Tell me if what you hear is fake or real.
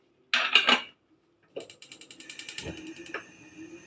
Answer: real